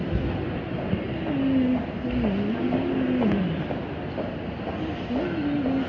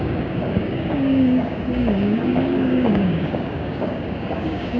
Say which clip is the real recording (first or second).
first